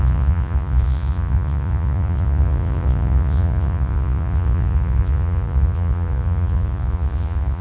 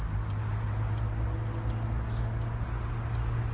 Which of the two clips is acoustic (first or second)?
second